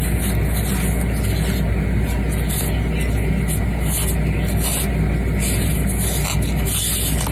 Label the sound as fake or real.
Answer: real